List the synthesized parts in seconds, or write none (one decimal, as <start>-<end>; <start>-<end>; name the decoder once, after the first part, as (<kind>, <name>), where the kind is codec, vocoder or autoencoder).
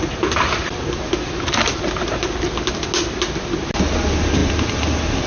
none